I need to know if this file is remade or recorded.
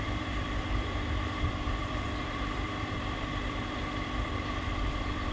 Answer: remade